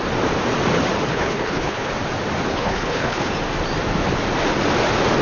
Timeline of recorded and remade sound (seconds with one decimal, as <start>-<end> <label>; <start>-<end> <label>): 0.0-1.1 recorded; 1.1-1.9 remade; 1.9-2.5 recorded; 2.5-3.3 remade; 3.3-5.2 recorded